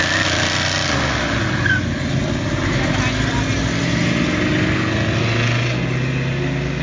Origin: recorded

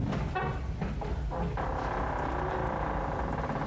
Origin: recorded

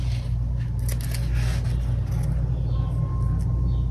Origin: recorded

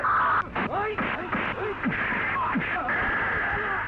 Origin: recorded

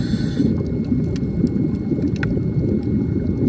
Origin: recorded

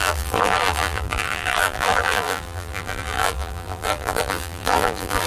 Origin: remade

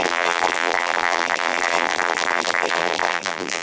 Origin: remade